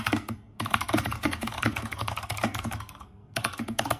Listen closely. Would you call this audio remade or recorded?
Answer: remade